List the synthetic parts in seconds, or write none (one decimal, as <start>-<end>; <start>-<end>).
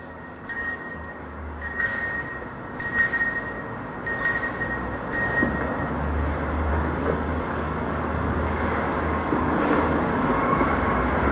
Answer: 0.0-1.9; 6.7-11.3